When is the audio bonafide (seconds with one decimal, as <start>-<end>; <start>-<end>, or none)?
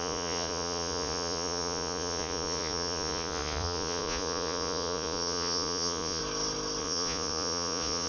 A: 6.2-6.8